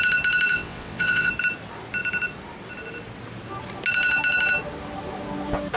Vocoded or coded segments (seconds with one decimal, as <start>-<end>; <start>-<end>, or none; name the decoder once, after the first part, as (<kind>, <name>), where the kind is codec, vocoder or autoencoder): 0.5-1.3 (vocoder, WaveNeXt)